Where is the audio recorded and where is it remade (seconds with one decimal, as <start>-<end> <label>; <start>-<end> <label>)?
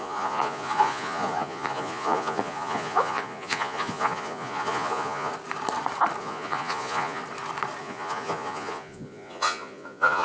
0.0-5.3 remade; 5.3-6.2 recorded; 6.2-7.2 remade; 7.2-7.8 recorded; 7.8-10.2 remade